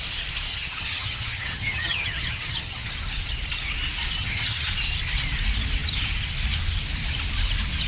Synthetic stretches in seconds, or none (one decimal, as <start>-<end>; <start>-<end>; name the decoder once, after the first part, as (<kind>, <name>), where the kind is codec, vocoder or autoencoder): 0.5-2.9 (vocoder, HiFi-GAN); 4.2-4.7